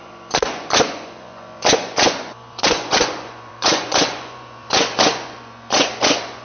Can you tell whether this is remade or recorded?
remade